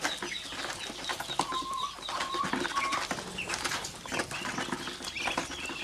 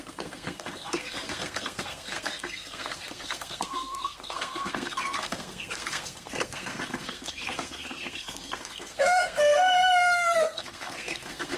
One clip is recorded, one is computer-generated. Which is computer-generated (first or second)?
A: second